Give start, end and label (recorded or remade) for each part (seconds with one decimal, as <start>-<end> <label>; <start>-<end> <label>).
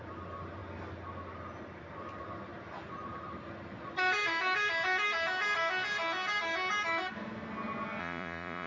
0.0-8.0 recorded; 8.0-8.7 remade